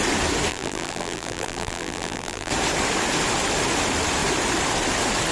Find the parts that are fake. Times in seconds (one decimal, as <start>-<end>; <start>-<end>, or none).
0.5-2.5